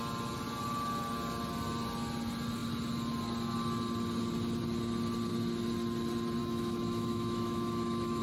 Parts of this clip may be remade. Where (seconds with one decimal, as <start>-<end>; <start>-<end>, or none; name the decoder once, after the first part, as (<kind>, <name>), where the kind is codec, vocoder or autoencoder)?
6.4-8.2 (autoencoder, DAC-VAE)